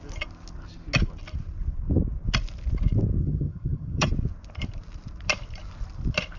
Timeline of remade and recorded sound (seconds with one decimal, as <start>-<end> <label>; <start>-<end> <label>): 0.0-3.2 recorded; 3.2-4.1 remade; 4.1-6.4 recorded